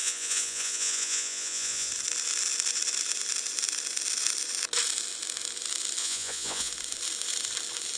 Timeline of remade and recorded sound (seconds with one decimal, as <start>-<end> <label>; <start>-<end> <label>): 0.0-1.9 remade; 1.9-6.0 recorded; 6.0-6.7 remade; 6.7-8.0 recorded